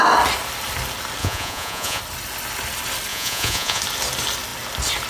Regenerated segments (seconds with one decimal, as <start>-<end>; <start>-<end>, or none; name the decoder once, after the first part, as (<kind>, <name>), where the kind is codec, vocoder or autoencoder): 1.2-2.0 (vocoder, Vocos); 3.1-3.8